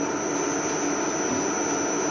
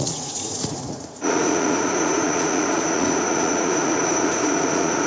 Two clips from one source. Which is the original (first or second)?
first